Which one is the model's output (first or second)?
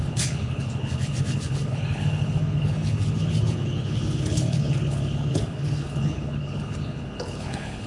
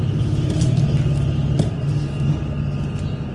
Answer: first